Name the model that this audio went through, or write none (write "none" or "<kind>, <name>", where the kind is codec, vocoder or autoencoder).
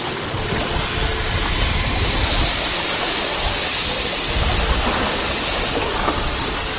none